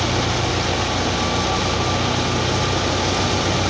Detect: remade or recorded recorded